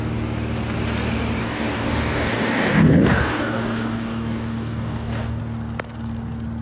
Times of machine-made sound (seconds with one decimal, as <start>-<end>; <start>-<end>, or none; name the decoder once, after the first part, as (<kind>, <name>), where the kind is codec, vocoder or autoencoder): 1.4-5.4 (codec, DAC)

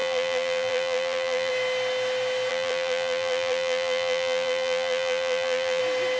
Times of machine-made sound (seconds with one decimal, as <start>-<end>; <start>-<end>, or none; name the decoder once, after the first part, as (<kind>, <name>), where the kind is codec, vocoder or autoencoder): 0.0-1.5 (vocoder, BigVGAN v2); 2.5-5.8

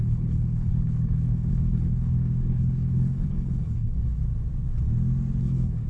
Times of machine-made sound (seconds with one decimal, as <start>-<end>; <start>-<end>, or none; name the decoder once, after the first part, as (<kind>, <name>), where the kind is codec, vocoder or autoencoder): 0.0-4.2 (codec, HILCodec); 5.4-5.9

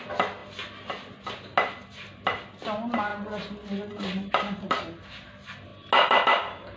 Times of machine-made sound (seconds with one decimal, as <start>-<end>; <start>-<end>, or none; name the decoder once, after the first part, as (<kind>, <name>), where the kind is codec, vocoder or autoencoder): none

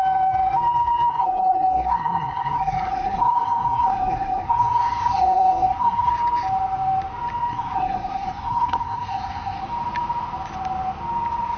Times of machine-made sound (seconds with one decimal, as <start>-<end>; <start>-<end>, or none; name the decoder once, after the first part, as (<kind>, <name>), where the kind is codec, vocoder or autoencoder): 1.1-6.1 (codec, SNAC); 7.5-9.6

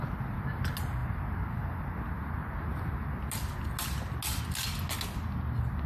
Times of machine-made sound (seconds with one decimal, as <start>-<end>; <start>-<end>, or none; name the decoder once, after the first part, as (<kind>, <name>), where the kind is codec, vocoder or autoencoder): none

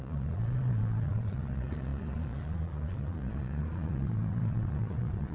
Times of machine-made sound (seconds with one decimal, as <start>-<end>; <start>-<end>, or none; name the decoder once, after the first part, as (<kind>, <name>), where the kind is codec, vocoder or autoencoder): 0.0-5.3 (vocoder, Vocos)

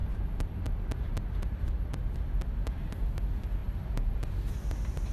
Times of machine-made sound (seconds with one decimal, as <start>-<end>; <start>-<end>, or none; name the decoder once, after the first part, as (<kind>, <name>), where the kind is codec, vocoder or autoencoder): 0.0-2.0 (vocoder, BigVGAN v2); 3.6-4.5